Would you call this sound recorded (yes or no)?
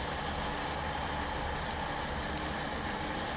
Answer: yes